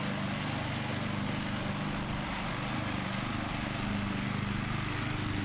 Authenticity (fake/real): real